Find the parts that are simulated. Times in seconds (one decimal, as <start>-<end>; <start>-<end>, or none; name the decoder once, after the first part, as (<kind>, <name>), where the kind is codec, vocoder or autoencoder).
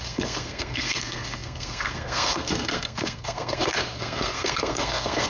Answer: 0.0-5.3 (codec, SNAC)